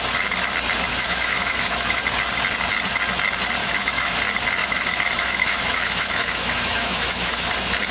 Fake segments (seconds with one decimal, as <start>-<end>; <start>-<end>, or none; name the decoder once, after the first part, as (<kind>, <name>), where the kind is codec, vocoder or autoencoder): 0.9-2.0 (autoencoder, DAC-VAE); 3.6-4.1; 4.6-7.5